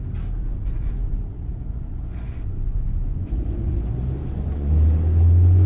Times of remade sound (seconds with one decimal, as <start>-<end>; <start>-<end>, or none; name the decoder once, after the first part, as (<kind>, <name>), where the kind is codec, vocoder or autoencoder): 0.4-3.8 (vocoder, Vocos); 4.2-4.7